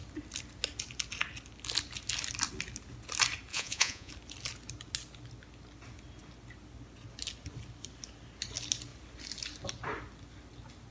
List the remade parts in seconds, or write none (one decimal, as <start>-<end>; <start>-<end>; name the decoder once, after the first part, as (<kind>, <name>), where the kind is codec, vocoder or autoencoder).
3.5-4.1 (vocoder, Vocos)